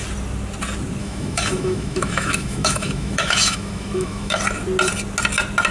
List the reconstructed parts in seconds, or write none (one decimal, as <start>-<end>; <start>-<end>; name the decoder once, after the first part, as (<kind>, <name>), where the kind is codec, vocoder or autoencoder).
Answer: 1.0-4.4 (autoencoder, DAC-VAE)